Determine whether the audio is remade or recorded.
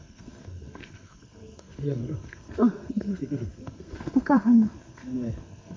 remade